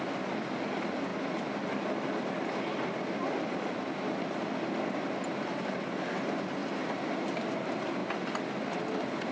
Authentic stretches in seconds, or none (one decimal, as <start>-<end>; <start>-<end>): 0.0-9.3